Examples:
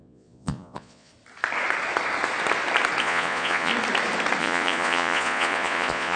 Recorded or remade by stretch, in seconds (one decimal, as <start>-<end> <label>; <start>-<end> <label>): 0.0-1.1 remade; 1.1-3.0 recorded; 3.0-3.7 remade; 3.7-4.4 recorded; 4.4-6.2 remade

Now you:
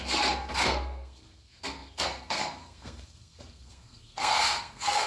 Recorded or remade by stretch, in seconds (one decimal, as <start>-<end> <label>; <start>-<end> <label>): 0.0-5.1 remade

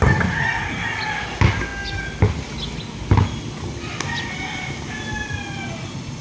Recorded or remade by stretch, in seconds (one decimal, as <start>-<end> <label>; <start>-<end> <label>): 0.0-6.2 recorded

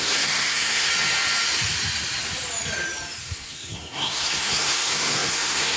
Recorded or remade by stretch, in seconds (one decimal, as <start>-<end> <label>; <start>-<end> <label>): 0.0-0.9 remade; 0.9-3.2 recorded; 3.2-5.8 remade